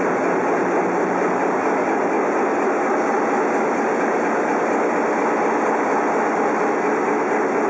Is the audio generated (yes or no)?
no